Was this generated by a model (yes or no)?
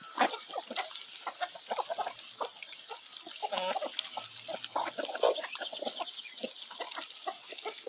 no